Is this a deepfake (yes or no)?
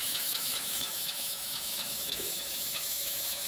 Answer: yes